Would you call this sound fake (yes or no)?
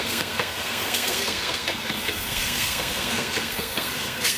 yes